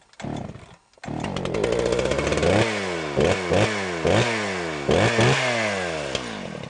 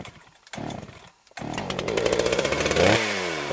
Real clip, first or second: first